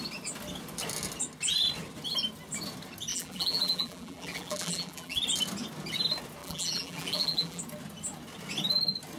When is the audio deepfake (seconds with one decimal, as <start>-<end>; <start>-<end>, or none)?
3.1-5.2; 6.4-7.6